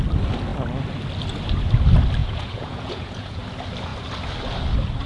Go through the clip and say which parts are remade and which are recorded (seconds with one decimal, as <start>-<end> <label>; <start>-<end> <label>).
0.0-2.2 recorded; 2.2-3.4 remade; 3.4-5.1 recorded